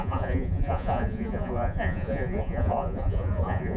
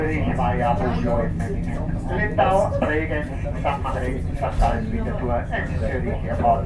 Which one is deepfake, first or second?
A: first